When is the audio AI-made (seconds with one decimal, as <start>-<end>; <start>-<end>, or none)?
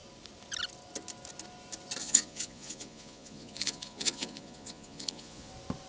2.0-5.5